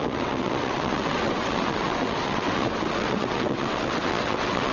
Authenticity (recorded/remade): remade